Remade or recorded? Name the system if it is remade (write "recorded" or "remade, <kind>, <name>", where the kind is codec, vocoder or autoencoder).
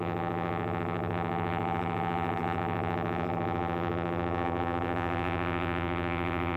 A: remade, vocoder, BigVGAN v2